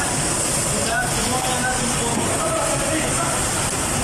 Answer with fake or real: real